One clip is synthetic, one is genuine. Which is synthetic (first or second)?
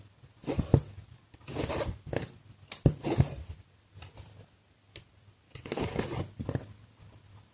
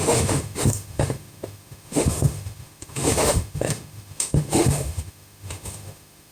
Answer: second